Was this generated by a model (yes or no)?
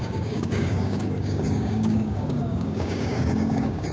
yes